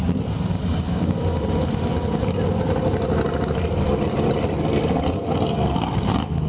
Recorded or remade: recorded